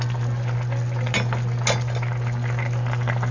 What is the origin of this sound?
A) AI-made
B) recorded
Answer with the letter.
B